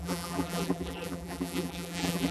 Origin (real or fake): fake